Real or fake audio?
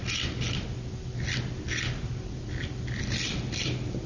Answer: real